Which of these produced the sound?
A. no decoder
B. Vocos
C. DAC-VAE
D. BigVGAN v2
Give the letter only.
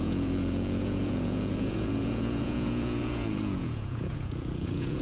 B